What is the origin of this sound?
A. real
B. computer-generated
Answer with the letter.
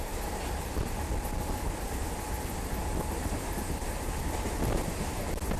A